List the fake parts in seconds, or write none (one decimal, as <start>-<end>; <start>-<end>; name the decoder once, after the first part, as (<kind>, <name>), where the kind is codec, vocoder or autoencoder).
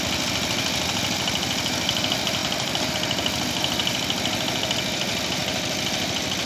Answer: 2.4-2.9 (vocoder, BigVGAN v2)